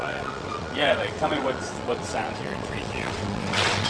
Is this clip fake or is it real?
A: fake